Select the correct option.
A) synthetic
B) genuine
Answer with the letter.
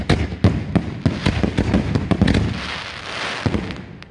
B